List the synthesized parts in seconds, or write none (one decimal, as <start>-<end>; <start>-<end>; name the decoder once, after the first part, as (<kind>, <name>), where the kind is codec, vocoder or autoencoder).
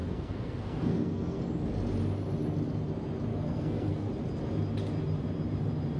0.0-1.4 (codec, SNAC); 3.3-4.1